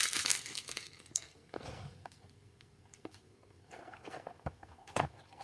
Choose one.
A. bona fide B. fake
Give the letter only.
B